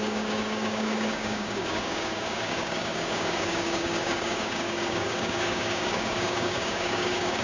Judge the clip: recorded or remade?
remade